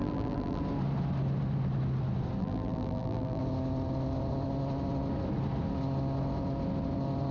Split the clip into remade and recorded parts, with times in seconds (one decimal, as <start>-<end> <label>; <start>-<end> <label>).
0.0-0.6 remade; 0.6-2.4 recorded; 2.4-3.4 remade; 3.4-7.3 recorded